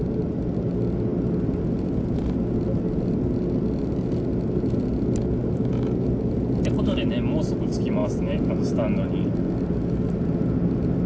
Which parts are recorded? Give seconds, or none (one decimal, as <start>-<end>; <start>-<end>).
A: 0.0-8.0; 8.5-11.1

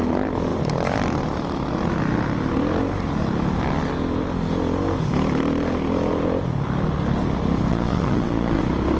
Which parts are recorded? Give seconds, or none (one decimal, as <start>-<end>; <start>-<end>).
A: 0.0-7.7; 8.6-9.0

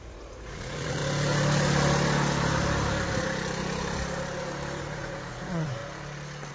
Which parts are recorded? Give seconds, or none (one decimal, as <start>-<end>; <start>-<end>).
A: 1.0-4.8; 5.8-6.5

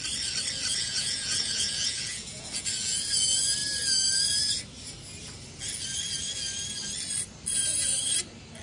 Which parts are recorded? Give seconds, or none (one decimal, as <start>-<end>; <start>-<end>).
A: 0.0-0.7; 3.1-8.6

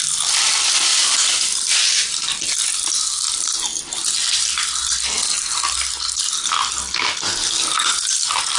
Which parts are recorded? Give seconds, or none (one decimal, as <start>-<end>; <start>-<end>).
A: 0.0-8.6

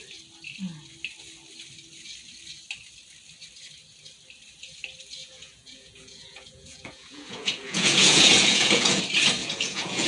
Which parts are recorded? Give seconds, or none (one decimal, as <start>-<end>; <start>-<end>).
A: 0.0-5.2; 9.0-9.4

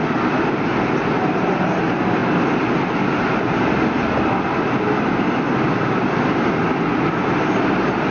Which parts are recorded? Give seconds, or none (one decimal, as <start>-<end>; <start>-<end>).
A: 0.0-8.1